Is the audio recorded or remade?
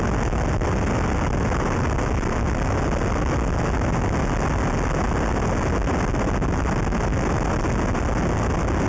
recorded